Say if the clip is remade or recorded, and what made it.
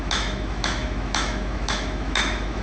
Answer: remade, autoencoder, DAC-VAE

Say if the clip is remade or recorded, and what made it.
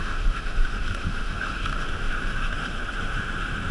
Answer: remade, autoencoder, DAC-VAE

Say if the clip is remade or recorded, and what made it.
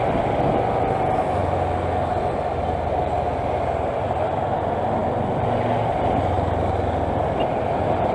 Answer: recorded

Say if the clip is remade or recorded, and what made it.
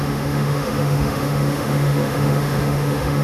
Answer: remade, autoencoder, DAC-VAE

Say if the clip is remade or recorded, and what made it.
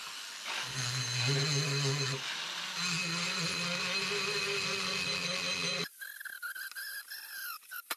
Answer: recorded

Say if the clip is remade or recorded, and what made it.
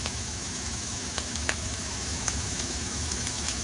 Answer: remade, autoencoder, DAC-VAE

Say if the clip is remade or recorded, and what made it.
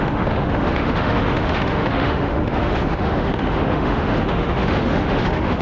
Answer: remade, autoencoder, DAC-VAE